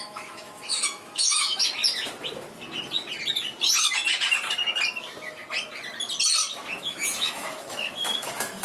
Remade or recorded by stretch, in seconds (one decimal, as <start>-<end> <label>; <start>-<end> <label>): 0.0-1.8 remade; 1.8-6.8 recorded; 6.8-8.6 remade